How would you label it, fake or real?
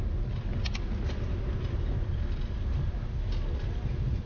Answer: real